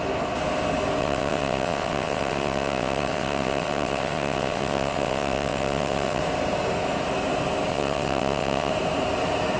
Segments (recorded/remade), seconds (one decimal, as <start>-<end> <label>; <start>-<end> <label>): 0.0-1.0 recorded; 1.0-6.2 remade; 6.2-7.7 recorded; 7.7-8.7 remade; 8.7-9.6 recorded